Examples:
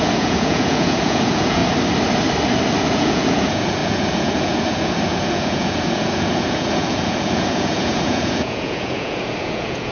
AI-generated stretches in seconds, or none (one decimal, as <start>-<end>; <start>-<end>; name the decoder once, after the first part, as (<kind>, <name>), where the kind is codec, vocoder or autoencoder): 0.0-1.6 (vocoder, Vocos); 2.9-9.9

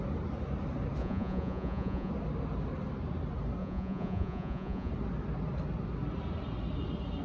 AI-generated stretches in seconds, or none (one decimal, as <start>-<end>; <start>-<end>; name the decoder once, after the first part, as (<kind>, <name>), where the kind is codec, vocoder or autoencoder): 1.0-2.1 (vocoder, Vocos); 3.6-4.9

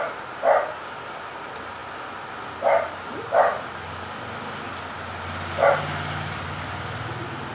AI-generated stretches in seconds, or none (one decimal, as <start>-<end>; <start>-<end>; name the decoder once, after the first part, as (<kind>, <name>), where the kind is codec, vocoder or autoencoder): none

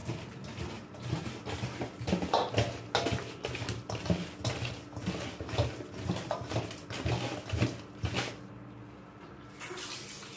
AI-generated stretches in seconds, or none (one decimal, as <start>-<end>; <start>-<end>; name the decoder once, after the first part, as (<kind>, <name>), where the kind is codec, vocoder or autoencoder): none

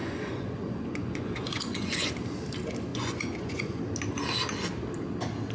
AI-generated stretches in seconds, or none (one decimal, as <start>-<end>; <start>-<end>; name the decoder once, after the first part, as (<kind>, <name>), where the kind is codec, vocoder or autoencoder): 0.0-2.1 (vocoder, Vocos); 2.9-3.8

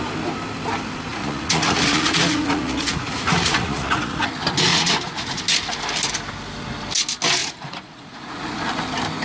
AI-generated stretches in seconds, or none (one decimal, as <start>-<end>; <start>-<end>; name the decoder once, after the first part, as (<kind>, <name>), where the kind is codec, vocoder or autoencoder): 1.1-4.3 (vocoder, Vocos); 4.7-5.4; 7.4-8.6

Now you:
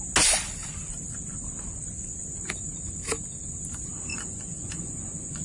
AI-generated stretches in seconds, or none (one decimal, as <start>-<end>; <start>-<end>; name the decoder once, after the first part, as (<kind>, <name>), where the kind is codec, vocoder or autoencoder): 4.1-5.4 (vocoder, Vocos)

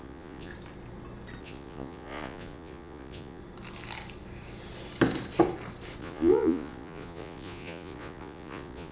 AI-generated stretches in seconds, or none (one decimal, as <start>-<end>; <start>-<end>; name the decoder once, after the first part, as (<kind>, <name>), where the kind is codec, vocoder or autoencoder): 0.0-0.5 (vocoder, Vocos); 1.4-3.4; 6.0-8.9